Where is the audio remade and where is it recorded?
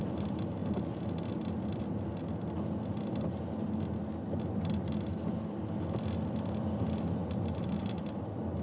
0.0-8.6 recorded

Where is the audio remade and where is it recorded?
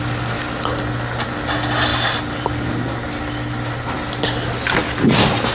0.0-5.5 recorded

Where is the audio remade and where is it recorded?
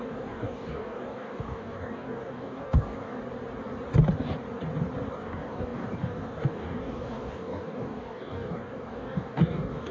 0.0-3.2 remade; 3.2-5.1 recorded; 5.1-9.9 remade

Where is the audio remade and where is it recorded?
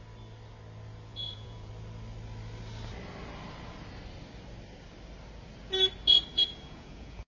0.0-1.1 recorded; 1.1-1.7 remade; 1.7-6.3 recorded; 6.3-7.3 remade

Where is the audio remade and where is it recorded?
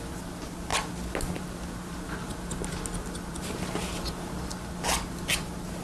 0.0-5.8 recorded